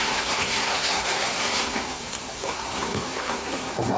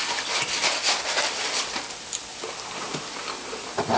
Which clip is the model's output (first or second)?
first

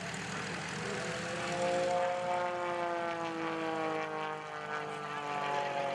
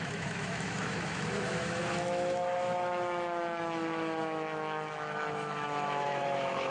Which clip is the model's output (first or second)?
second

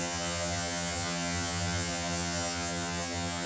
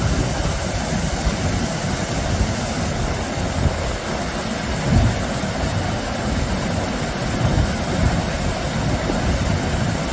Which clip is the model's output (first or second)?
first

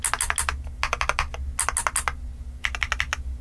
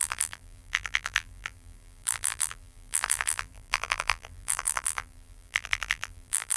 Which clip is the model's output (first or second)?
second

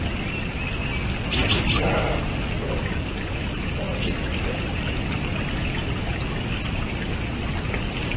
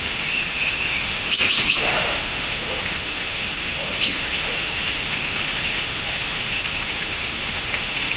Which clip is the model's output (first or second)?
second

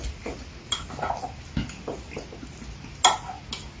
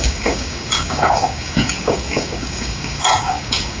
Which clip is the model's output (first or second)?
second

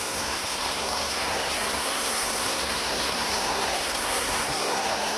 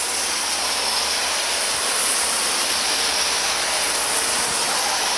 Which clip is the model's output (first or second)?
first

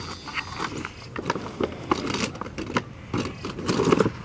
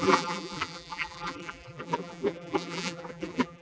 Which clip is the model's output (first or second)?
second